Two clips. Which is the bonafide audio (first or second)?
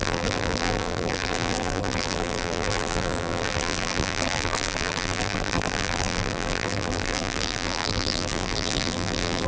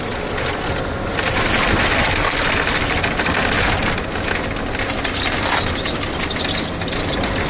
second